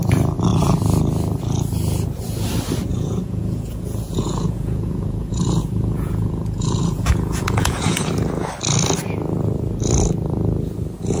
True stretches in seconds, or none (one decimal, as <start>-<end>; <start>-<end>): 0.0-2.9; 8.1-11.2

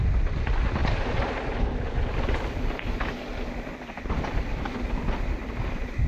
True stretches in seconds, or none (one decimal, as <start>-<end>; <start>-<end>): 0.0-6.1

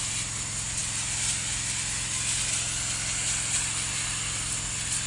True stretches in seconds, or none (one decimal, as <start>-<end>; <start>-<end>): 0.0-5.1

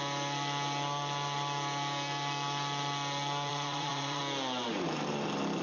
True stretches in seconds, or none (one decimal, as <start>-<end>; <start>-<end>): 0.0-3.5; 4.2-5.6

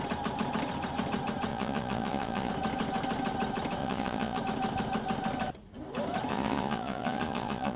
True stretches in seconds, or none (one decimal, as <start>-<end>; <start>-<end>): 0.0-1.5; 2.5-3.8; 4.4-6.3

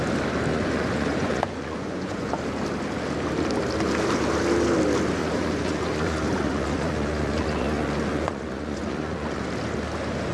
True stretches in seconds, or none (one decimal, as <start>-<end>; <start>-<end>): 0.0-0.5; 2.3-5.2; 9.4-10.3